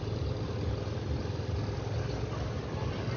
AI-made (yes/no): no